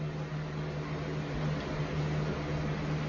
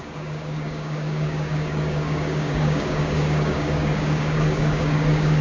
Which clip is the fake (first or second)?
second